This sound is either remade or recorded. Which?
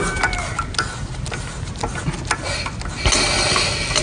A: recorded